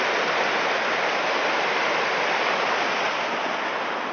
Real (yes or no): yes